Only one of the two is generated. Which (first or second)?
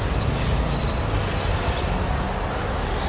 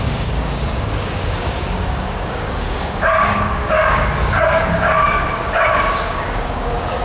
second